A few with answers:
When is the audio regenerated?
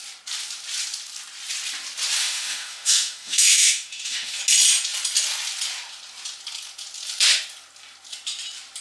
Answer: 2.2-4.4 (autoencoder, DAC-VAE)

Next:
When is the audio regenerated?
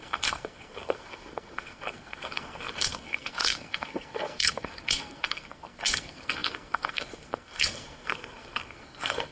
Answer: 0.0-9.3 (codec, SNAC)